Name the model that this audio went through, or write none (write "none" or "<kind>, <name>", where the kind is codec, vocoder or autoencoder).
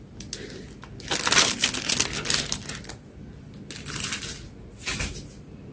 none